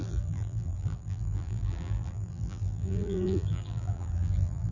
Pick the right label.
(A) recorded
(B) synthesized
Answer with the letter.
B